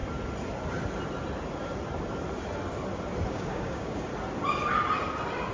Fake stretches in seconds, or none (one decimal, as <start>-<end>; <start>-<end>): 3.3-4.1